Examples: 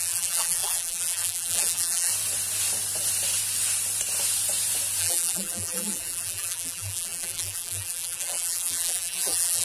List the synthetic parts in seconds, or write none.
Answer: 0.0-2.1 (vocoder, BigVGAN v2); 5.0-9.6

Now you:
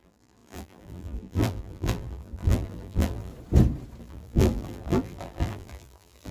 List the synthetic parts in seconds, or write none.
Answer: 0.0-3.3 (vocoder, BigVGAN v2); 4.0-6.3

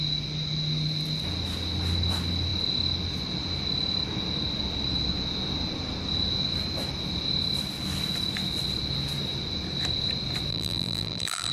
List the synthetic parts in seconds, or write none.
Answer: 10.5-11.5 (vocoder, BigVGAN v2)

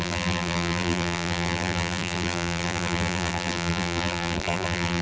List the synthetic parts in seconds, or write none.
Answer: 0.0-5.0 (vocoder, BigVGAN v2)

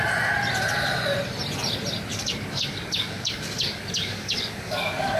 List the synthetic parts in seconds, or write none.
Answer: 2.1-5.2 (codec, DAC)

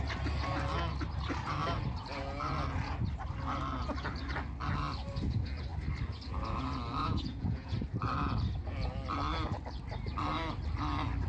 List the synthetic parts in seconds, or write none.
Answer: 7.0-7.7 (vocoder, Vocos)

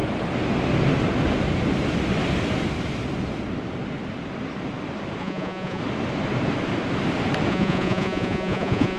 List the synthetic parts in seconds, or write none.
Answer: 5.2-5.8 (vocoder, Vocos); 7.5-9.0

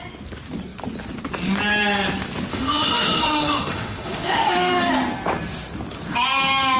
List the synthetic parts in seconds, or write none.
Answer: 2.5-4.9 (autoencoder, DAC-VAE)